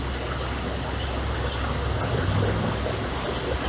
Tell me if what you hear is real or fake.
real